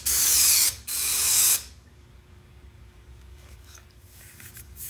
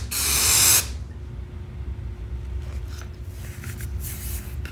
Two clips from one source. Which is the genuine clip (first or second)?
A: second